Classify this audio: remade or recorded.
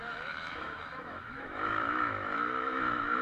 remade